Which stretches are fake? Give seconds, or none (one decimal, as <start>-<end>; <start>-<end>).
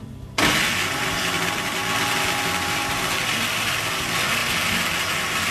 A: 0.0-1.8; 2.3-4.4; 4.9-5.5